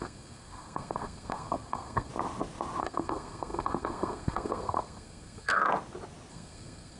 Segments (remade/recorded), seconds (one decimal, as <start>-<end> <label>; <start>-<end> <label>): 0.0-2.1 remade; 2.1-2.8 recorded; 2.8-5.6 remade; 5.6-6.3 recorded; 6.3-7.0 remade

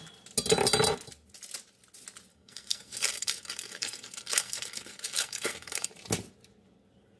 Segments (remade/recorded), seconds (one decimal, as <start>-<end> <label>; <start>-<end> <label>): 0.0-2.3 recorded; 2.3-5.9 remade; 5.9-7.2 recorded

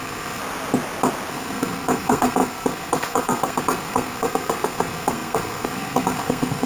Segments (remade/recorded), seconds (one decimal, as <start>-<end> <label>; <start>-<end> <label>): 0.0-0.4 remade; 0.4-1.3 recorded; 1.3-6.7 remade

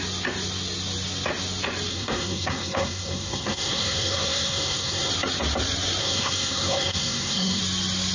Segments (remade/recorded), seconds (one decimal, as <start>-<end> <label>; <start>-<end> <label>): 0.0-1.9 recorded; 1.9-5.1 remade; 5.1-6.0 recorded; 6.0-7.6 remade; 7.6-8.1 recorded

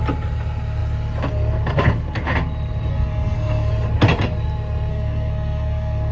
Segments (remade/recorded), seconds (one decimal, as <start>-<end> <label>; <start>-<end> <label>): 0.0-2.9 recorded; 2.9-3.7 remade; 3.7-4.9 recorded; 4.9-6.1 remade

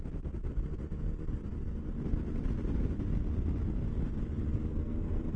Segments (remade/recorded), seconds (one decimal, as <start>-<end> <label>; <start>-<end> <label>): 0.0-4.7 recorded; 4.7-5.4 remade